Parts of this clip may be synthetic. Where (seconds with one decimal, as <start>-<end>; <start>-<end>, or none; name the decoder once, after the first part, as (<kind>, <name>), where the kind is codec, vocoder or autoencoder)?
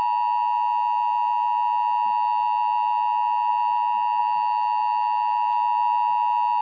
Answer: none